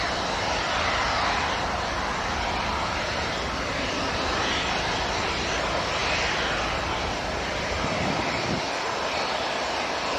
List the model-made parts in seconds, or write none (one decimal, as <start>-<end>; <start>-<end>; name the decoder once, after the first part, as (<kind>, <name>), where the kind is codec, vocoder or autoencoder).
none